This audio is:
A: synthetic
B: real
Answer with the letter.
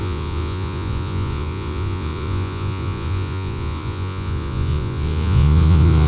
A